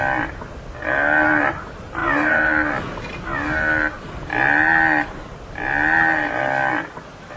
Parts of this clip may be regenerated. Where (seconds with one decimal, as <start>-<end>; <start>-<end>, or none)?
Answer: none